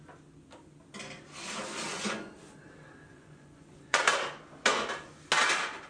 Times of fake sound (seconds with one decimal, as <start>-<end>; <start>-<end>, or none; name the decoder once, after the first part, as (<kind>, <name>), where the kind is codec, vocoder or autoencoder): 1.9-2.4 (vocoder, Vocos); 3.1-4.0